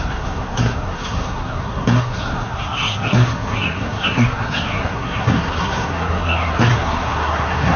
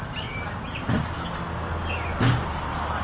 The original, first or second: second